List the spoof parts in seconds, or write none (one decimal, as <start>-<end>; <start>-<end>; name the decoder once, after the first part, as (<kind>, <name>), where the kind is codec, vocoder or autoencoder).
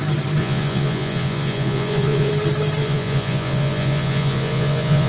0.4-2.3 (vocoder, Vocos); 2.8-5.1